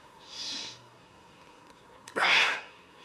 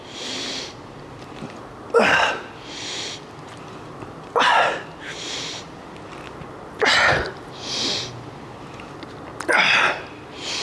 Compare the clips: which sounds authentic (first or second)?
second